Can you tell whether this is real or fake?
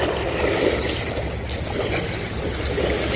real